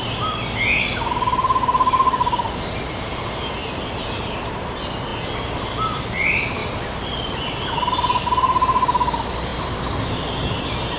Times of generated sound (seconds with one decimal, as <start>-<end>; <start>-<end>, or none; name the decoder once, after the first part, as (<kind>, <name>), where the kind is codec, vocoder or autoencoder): none